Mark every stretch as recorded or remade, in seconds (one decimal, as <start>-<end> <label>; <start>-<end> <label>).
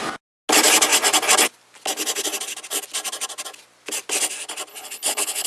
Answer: 0.0-4.7 recorded; 4.7-5.5 remade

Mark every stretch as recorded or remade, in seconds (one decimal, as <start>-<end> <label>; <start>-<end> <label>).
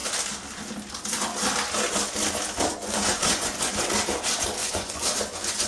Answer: 0.0-2.7 recorded; 2.7-3.9 remade; 3.9-4.6 recorded; 4.6-5.7 remade